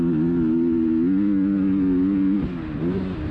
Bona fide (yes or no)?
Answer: yes